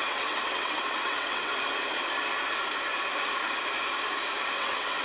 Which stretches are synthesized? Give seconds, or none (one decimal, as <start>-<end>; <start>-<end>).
0.0-1.5; 4.5-5.0